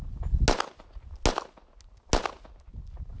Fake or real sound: real